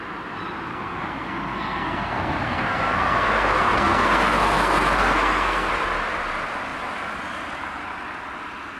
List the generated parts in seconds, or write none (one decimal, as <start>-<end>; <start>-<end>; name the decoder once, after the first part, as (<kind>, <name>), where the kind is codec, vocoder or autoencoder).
0.7-5.7 (codec, SNAC)